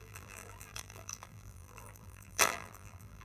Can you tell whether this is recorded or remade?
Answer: remade